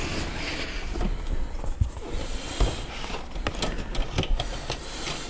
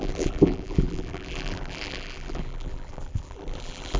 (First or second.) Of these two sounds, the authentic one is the first